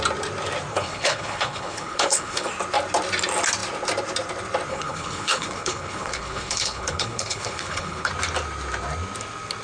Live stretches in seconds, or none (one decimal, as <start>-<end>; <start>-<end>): 0.0-0.7; 2.5-4.7; 8.1-9.6